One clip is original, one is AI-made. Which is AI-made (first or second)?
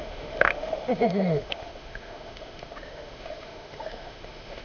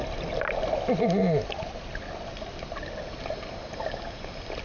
first